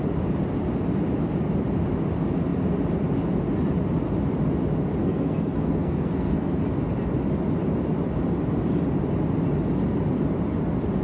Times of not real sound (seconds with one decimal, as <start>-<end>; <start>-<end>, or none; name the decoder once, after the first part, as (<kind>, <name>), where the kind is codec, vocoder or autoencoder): 5.0-6.5 (codec, SNAC)